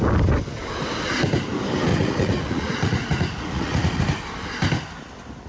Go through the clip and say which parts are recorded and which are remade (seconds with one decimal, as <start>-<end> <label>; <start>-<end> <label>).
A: 0.0-1.9 recorded; 1.9-4.0 remade; 4.0-5.5 recorded